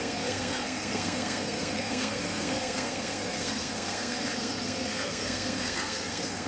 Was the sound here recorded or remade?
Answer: remade